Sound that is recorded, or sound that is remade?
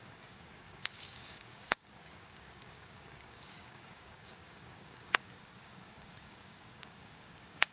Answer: remade